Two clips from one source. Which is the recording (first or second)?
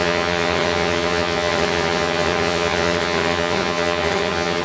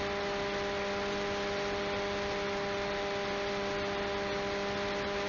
second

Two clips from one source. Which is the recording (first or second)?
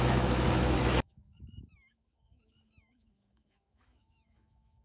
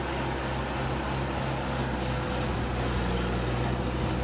second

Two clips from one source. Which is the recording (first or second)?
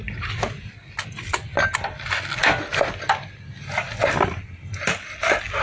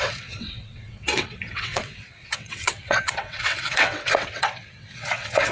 first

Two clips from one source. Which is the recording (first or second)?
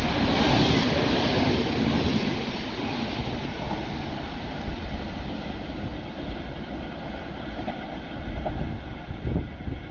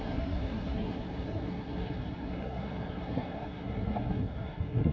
first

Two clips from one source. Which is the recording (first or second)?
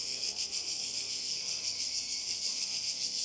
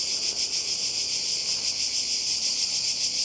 second